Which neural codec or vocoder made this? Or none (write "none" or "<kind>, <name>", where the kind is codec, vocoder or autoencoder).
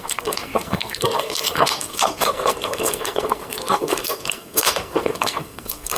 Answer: codec, SNAC